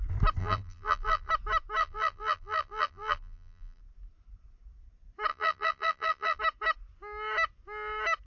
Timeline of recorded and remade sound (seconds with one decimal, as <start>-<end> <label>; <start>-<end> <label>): 0.0-0.4 recorded; 0.4-1.3 remade; 1.3-1.8 recorded; 1.8-3.8 remade; 3.8-5.3 recorded; 5.3-6.4 remade; 6.4-8.3 recorded